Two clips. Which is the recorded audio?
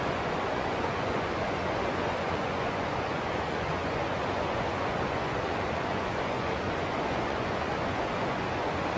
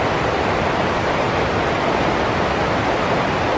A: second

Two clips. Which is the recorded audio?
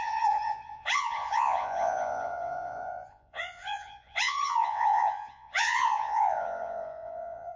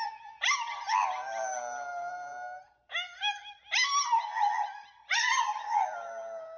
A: second